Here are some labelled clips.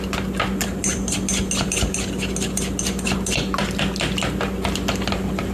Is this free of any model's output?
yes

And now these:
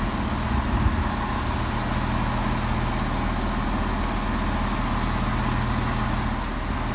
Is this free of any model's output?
yes